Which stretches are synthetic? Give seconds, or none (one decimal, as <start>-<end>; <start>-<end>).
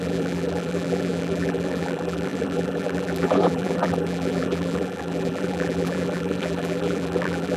0.0-7.6